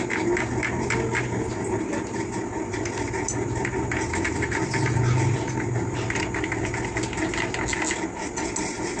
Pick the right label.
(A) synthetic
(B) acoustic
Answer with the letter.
B